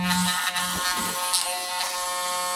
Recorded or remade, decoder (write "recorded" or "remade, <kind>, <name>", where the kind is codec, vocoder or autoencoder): recorded